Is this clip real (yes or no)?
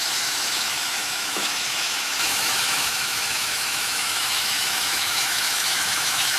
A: no